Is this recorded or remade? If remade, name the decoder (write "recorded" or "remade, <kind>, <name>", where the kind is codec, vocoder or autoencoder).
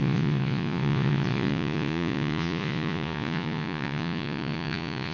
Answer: remade, vocoder, Vocos